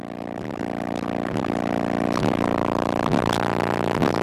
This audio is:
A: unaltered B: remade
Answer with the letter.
A